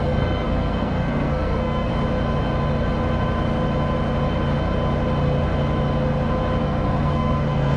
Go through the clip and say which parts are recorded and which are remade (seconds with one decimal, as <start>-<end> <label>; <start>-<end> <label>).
0.0-1.9 remade; 1.9-6.6 recorded; 6.6-7.8 remade

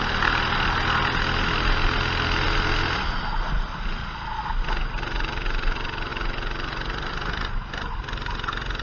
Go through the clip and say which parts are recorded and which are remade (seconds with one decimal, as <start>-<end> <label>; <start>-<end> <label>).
0.0-8.8 recorded

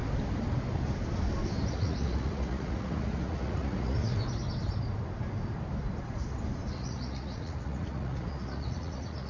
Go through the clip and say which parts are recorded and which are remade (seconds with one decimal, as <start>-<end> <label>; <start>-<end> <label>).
0.0-1.7 recorded; 1.7-4.1 remade; 4.1-6.8 recorded; 6.8-9.3 remade

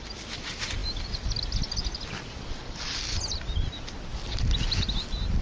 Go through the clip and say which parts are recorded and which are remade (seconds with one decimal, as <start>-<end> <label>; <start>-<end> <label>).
0.0-5.4 recorded

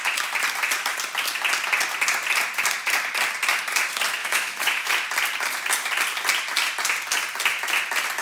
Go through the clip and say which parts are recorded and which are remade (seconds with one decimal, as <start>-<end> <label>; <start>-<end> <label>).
0.0-4.2 recorded; 4.2-4.9 remade; 4.9-8.2 recorded

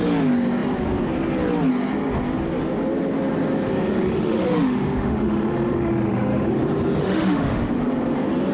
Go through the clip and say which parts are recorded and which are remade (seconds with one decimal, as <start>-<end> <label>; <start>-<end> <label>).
0.0-3.9 recorded; 3.9-6.5 remade; 6.5-7.0 recorded; 7.0-7.7 remade; 7.7-8.5 recorded

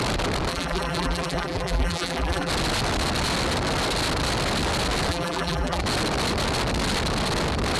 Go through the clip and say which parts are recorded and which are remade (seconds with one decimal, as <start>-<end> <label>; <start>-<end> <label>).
0.0-0.5 recorded; 0.5-2.5 remade; 2.5-5.1 recorded; 5.1-5.8 remade; 5.8-7.8 recorded